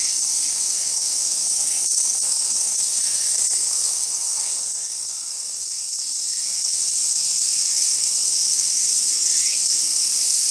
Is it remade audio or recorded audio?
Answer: remade